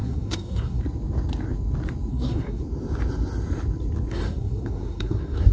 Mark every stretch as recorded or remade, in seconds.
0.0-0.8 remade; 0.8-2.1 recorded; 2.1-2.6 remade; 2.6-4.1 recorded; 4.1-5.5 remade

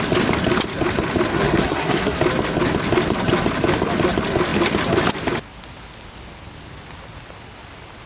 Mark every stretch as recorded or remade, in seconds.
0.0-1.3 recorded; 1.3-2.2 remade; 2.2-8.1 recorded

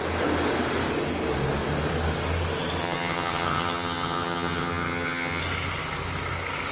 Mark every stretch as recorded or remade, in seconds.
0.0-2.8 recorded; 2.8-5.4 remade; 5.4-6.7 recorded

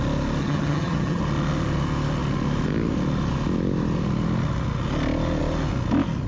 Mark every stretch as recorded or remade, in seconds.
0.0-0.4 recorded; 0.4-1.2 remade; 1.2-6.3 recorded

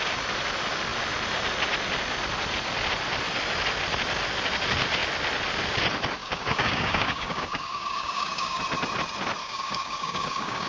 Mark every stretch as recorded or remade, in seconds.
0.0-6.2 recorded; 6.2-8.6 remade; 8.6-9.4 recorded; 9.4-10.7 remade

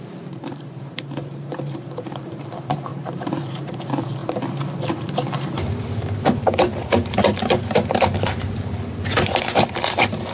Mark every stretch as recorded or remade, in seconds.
0.0-4.2 remade; 4.2-4.7 recorded; 4.7-10.3 remade